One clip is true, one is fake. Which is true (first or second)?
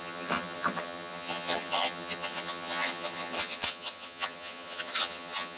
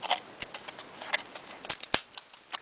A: second